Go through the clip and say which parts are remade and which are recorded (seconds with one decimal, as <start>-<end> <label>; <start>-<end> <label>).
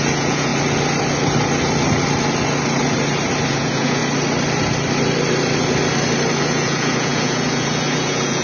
0.0-0.5 remade; 0.5-3.5 recorded; 3.5-4.0 remade; 4.0-6.4 recorded; 6.4-8.4 remade